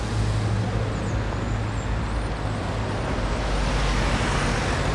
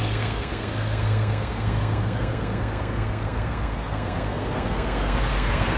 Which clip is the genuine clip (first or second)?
first